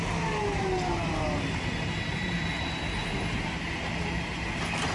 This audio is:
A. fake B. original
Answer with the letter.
B